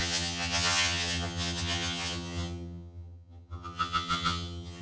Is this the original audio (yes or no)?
no